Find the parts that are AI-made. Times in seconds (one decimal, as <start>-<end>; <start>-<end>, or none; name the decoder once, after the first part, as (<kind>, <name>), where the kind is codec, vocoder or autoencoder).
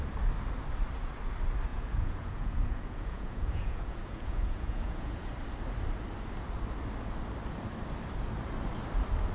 1.7-5.3 (vocoder, Vocos)